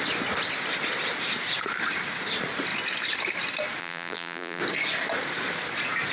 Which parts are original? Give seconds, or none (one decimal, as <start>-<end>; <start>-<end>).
0.0-3.8; 4.6-6.1